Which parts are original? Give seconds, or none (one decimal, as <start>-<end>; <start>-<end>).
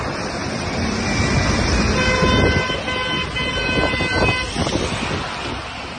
0.0-6.0